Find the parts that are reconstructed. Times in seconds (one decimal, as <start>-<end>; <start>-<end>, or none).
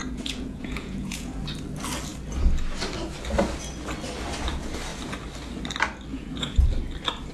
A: 0.0-1.4; 6.1-6.6